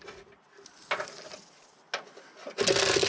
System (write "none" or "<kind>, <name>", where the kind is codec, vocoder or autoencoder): none